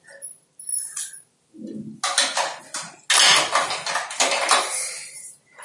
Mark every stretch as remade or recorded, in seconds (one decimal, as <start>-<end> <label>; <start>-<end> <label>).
0.0-5.6 recorded